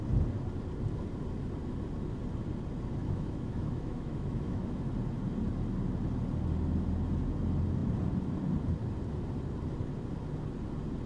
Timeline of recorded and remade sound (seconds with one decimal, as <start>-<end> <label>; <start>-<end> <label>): 0.0-3.0 recorded; 3.0-4.9 remade; 4.9-11.1 recorded